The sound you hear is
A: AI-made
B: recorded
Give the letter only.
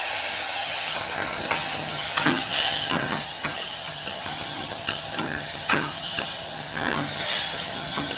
A